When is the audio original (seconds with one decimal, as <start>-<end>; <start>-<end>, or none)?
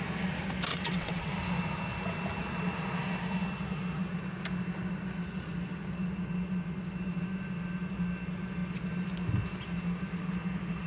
0.0-0.7; 1.3-10.9